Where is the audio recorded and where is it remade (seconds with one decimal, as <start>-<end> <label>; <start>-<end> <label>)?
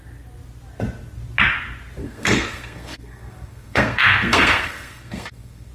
0.0-2.0 recorded; 2.0-5.7 remade